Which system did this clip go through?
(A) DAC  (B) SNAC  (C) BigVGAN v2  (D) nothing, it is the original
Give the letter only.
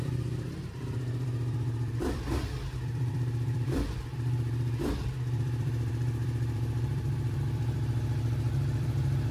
C